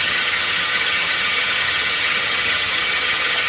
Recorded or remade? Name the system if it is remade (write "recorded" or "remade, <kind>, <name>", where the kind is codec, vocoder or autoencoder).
remade, vocoder, HiFi-GAN